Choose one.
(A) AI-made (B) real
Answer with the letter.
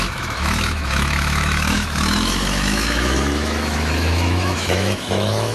A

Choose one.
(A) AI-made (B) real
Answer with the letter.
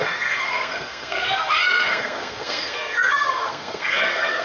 A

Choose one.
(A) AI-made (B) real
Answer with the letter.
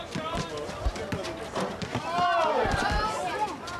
A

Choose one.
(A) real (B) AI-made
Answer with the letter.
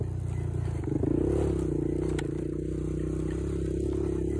A